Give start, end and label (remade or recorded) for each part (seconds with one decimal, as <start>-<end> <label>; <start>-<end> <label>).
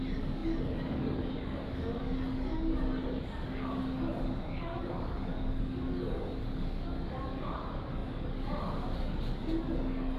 0.0-10.2 remade